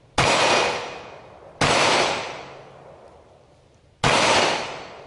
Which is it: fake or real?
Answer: real